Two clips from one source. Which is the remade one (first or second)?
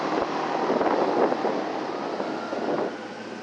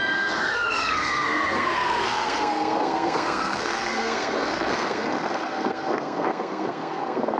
second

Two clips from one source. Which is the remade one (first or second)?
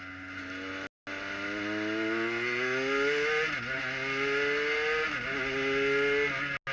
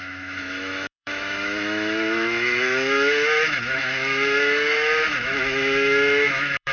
second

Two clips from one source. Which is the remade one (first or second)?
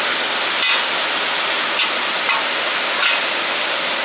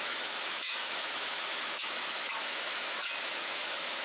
second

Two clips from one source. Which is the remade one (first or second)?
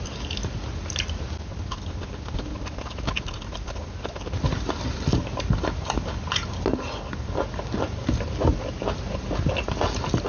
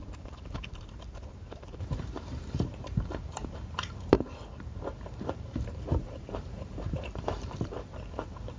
second